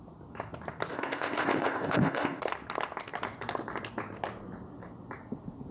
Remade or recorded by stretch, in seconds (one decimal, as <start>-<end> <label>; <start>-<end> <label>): 0.0-0.9 recorded; 0.9-2.4 remade; 2.4-5.7 recorded